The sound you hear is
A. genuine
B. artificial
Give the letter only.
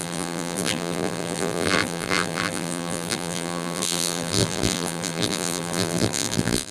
B